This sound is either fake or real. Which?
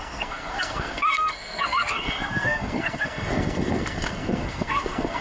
fake